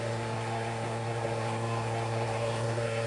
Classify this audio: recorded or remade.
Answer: remade